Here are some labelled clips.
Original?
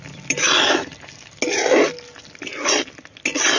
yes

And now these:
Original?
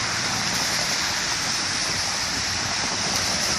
no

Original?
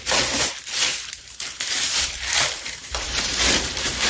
no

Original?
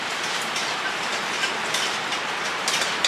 no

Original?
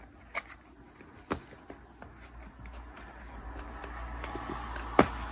yes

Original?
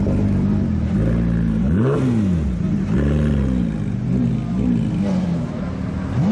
yes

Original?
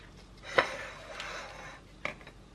yes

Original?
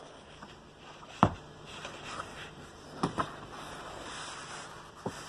no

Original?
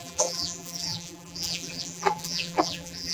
no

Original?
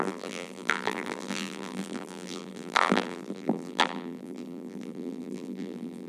no